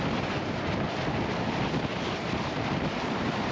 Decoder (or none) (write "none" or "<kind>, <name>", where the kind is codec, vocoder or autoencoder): none